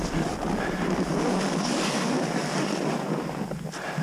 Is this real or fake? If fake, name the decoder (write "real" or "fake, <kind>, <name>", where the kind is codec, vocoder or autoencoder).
real